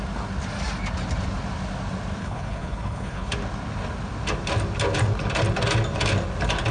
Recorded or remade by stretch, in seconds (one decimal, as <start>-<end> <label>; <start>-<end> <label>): 0.0-2.2 recorded; 2.2-3.3 remade; 3.3-6.7 recorded